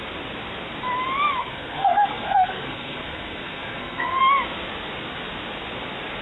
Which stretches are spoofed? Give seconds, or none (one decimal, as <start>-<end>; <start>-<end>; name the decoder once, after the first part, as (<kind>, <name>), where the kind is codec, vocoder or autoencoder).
1.4-4.2 (codec, SNAC)